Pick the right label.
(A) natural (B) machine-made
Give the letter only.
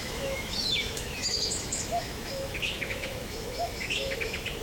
B